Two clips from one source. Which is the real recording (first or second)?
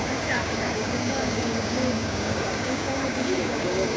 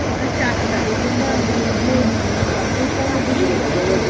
second